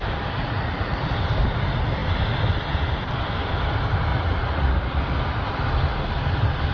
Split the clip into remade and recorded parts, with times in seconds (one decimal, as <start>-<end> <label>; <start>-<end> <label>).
0.0-0.4 recorded; 0.4-1.1 remade; 1.1-4.1 recorded; 4.1-5.0 remade; 5.0-6.7 recorded